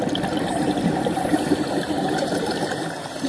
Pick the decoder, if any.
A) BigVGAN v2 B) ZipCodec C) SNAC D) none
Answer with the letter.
D